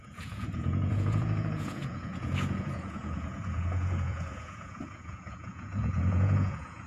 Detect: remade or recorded remade